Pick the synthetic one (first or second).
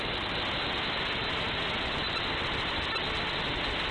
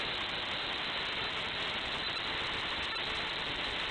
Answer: second